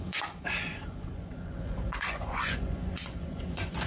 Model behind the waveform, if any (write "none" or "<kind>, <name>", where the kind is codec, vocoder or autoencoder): vocoder, Vocos